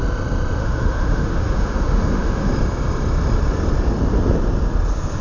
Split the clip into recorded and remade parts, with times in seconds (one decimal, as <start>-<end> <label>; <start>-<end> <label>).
0.0-0.6 recorded; 0.6-2.5 remade; 2.5-5.2 recorded